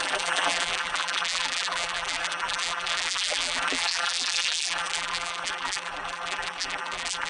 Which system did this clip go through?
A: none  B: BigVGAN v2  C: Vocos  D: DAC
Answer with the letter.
B